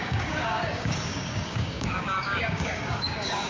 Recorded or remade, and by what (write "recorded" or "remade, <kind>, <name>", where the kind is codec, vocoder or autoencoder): remade, codec, DAC